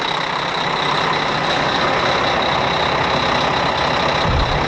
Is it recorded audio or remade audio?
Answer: recorded